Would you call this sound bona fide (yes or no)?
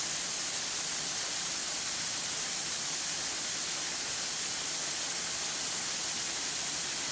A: yes